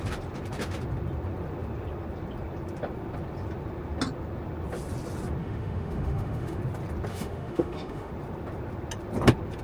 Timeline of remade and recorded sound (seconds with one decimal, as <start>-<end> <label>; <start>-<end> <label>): 0.0-5.4 recorded; 5.4-6.6 remade; 6.6-7.1 recorded; 7.1-8.1 remade; 8.1-9.6 recorded